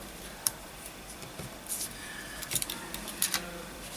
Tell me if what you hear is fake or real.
fake